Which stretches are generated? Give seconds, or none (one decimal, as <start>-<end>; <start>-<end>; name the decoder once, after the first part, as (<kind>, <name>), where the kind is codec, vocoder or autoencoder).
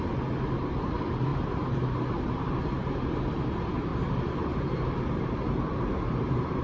0.0-3.9 (vocoder, BigVGAN v2); 5.2-6.6